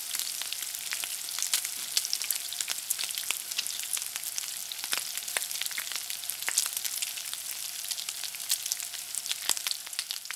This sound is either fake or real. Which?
real